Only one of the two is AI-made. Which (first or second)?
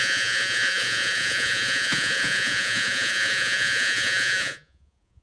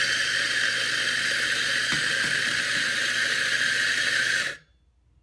first